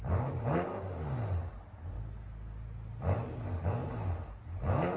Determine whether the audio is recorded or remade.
recorded